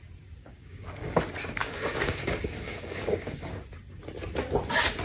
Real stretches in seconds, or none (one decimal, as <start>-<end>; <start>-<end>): 0.0-0.4; 1.2-1.6; 3.6-5.0